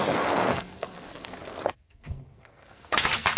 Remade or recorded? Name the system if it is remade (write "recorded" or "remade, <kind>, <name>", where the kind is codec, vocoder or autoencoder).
remade, codec, SNAC